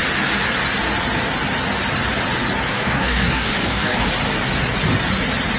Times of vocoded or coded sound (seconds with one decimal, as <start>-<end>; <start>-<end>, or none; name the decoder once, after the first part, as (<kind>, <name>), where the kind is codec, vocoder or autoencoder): 2.7-4.1 (codec, DAC)

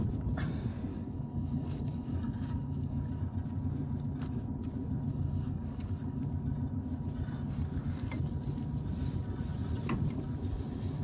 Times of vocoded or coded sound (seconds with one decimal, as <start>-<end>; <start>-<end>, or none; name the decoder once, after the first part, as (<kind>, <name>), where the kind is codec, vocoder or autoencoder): 0.9-3.2 (codec, DAC); 5.1-6.2